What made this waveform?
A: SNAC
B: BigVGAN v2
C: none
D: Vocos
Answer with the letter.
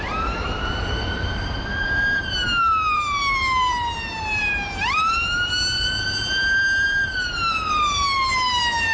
B